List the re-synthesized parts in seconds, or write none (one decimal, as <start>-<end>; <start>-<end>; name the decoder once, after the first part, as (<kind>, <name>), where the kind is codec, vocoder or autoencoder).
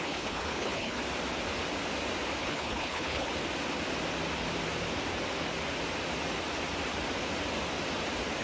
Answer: 0.0-1.0 (codec, HILCodec); 2.4-3.3